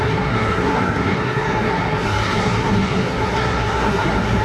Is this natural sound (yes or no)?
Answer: no